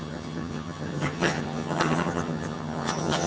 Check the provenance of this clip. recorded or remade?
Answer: remade